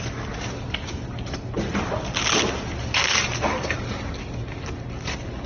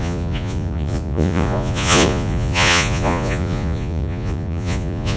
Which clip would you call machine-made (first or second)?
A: second